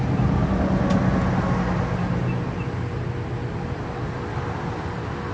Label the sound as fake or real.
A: real